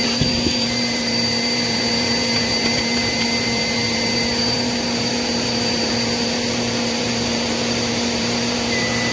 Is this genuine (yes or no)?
no